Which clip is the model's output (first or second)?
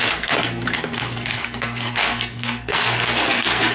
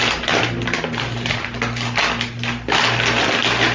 first